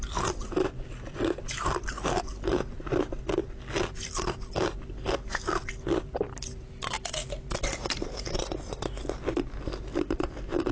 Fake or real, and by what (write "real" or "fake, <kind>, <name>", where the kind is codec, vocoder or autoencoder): real